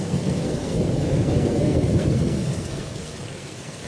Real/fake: fake